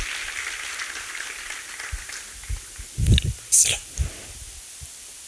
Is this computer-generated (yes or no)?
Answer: no